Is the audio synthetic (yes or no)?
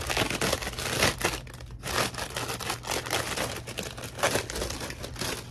no